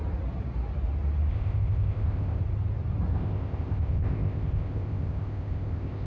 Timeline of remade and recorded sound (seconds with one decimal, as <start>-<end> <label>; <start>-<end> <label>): 0.0-1.3 recorded; 1.3-2.4 remade; 2.4-3.1 recorded; 3.1-6.1 remade